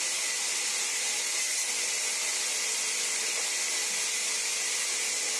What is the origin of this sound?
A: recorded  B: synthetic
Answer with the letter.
A